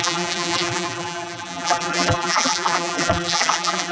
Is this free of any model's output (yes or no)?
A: no